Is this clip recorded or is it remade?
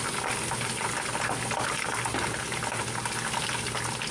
recorded